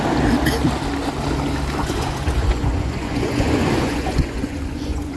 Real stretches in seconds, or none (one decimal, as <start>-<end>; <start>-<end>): 0.0-1.8